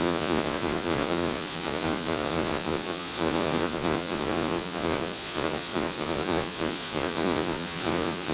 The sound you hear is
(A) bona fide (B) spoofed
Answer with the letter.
B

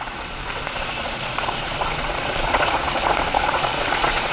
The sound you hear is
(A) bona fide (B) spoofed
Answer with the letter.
B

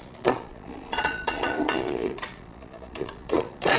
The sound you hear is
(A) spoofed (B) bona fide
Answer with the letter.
A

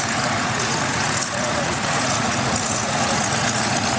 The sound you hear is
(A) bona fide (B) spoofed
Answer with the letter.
B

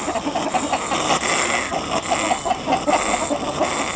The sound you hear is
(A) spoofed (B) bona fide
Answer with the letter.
B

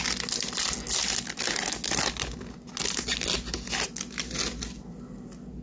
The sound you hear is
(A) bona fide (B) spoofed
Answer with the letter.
A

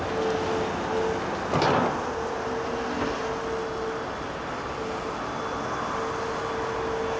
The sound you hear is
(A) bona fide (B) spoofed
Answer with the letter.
A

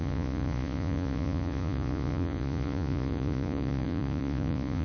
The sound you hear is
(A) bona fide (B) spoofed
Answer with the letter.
B